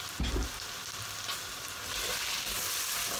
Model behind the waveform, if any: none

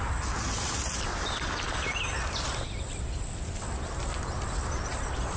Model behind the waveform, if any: none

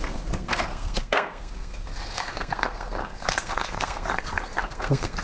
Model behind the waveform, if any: codec, SNAC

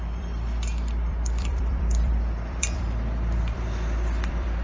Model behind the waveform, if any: vocoder, BigVGAN v2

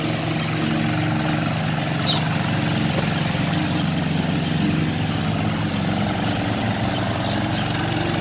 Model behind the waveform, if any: none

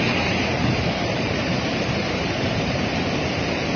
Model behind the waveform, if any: vocoder, BigVGAN v2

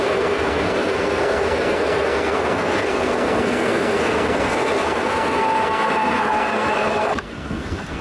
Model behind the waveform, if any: codec, SNAC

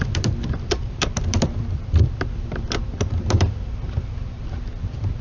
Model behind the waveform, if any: vocoder, BigVGAN v2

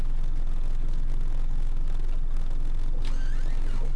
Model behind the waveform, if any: none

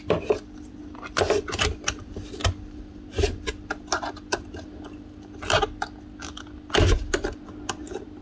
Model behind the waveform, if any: none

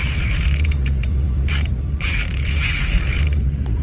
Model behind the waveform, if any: vocoder, Vocos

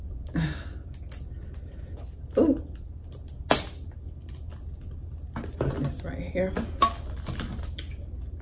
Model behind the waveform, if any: none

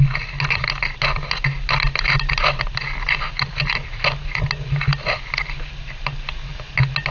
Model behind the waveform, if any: none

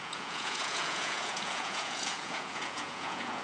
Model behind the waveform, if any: vocoder, Vocos